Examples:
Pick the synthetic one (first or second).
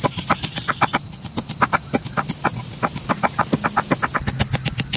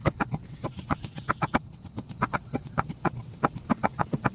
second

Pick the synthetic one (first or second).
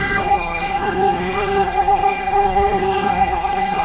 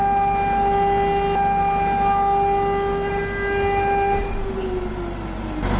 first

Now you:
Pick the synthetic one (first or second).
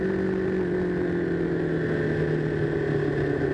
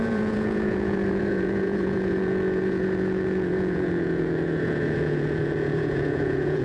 second